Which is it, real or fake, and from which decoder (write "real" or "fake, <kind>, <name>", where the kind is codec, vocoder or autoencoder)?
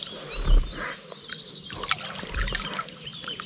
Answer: real